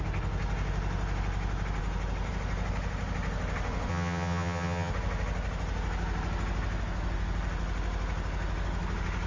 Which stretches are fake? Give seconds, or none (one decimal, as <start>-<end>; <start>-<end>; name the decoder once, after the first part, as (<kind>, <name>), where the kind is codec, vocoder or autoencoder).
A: 3.9-4.9 (vocoder, HiFi-GAN)